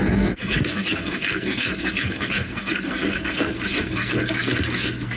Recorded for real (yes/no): no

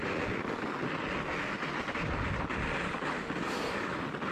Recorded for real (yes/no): yes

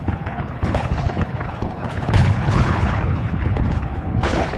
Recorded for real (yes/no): no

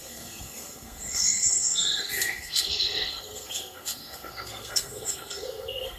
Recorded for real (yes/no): no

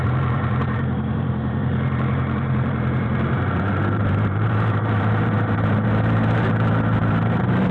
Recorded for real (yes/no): no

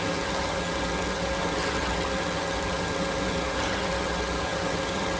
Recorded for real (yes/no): no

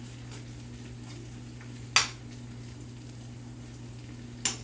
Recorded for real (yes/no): yes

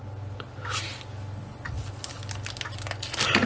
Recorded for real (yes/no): yes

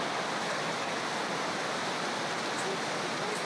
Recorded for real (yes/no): yes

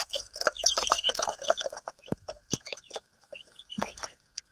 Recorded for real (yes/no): no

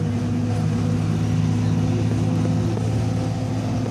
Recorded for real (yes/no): yes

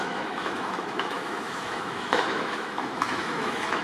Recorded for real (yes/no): no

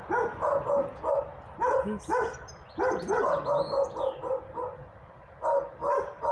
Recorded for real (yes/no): yes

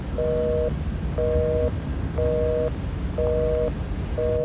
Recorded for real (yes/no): yes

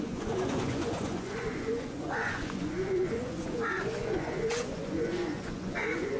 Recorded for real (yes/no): no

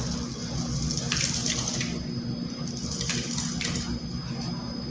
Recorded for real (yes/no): yes